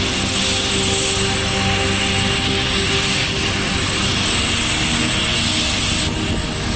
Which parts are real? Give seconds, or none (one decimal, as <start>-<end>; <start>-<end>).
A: 0.0-6.8